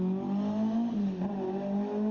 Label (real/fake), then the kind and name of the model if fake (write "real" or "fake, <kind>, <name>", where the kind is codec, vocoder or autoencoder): real